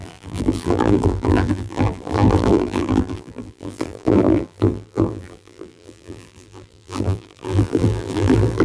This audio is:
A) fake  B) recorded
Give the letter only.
A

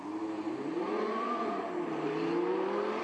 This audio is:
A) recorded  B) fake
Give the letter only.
A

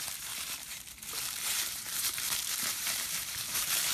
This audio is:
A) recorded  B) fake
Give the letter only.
B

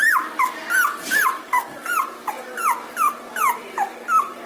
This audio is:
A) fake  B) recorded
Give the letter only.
A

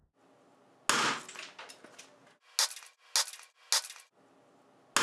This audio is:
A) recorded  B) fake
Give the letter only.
A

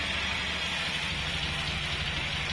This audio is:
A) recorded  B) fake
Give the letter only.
A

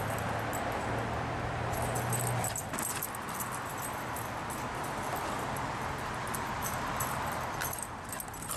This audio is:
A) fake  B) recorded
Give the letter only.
B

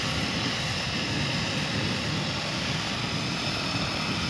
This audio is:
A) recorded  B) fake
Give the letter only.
A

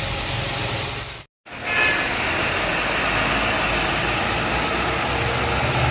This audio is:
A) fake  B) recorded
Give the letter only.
B